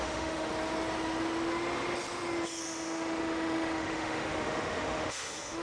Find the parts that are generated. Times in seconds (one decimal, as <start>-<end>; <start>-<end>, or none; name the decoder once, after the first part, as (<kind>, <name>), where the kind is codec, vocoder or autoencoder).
0.0-0.5 (autoencoder, DAC-VAE); 2.6-5.6